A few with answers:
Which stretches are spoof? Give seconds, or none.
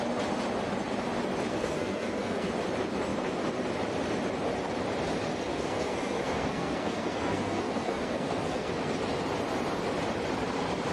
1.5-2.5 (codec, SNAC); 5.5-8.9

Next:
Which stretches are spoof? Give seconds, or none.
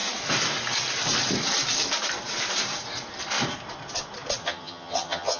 4.4-5.4 (vocoder, HiFi-GAN)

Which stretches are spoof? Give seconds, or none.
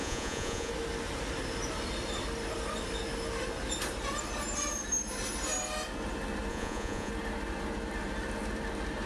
0.0-0.7 (vocoder, Vocos); 6.5-7.1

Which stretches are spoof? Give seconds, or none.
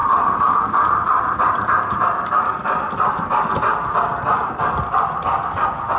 none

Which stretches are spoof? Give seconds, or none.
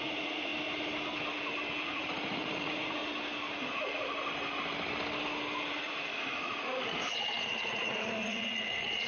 0.0-0.5 (vocoder, Vocos); 1.8-3.0; 5.7-9.1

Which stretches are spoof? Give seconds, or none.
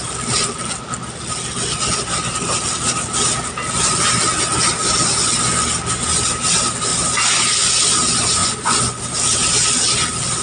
8.4-9.0 (vocoder, Vocos)